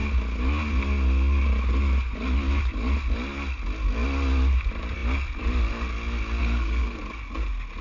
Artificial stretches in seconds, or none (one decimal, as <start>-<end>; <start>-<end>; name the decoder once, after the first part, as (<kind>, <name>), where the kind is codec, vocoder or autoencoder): 6.4-7.0 (codec, SNAC)